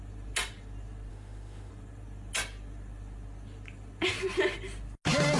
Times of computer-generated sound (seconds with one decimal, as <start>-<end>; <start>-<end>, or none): 1.1-1.7